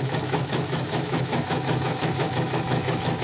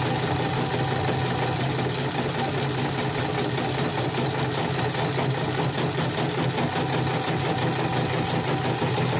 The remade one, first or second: first